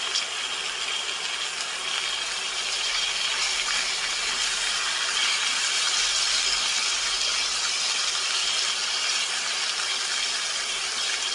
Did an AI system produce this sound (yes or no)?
no